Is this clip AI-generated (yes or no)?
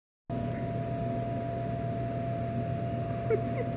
no